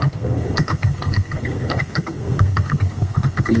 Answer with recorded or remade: remade